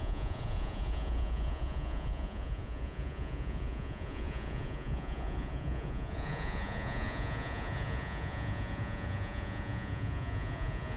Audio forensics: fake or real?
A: fake